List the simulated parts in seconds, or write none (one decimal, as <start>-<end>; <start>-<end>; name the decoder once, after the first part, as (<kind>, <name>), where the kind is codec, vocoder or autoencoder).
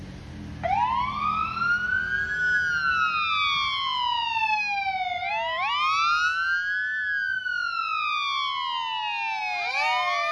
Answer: none